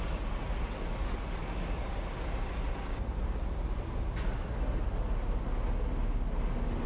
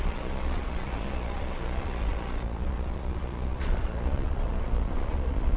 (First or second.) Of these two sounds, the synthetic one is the second